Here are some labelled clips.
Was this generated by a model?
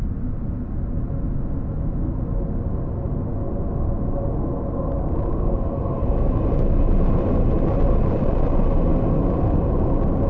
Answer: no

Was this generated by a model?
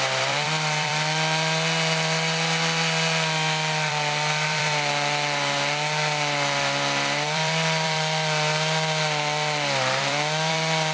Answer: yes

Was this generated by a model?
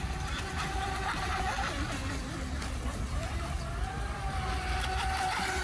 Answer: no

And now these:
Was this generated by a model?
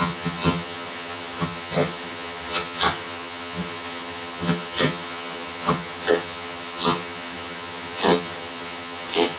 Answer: yes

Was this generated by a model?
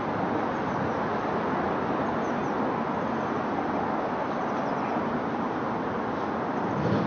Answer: no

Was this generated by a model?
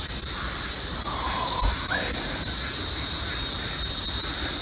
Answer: no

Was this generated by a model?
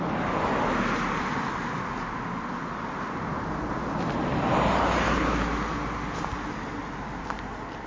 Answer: no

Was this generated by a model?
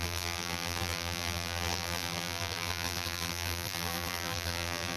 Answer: yes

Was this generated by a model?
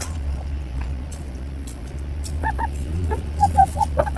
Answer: yes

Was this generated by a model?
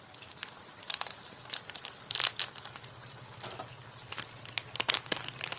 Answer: no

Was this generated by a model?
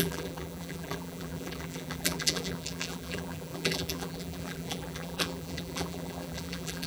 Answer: yes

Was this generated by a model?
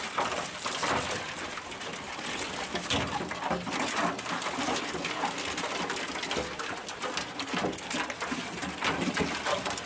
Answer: no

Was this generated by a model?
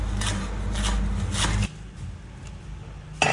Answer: no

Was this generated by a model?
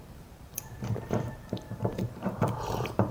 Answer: yes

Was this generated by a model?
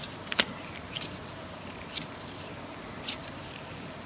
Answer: no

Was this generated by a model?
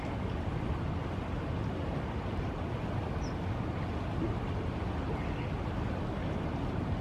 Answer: no